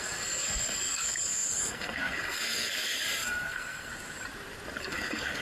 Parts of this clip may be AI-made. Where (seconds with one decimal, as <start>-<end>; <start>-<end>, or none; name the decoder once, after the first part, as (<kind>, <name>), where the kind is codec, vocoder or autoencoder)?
0.0-3.9 (codec, SNAC); 4.8-5.4